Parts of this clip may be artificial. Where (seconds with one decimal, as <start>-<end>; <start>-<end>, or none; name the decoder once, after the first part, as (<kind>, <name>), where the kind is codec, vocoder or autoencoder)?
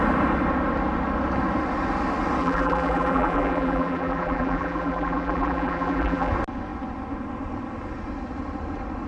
2.4-6.3 (vocoder, BigVGAN v2)